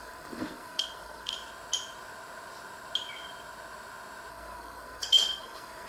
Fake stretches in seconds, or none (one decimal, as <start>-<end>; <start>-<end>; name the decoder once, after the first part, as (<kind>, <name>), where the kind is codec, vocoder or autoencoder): 0.0-1.3 (codec, SNAC); 4.3-5.9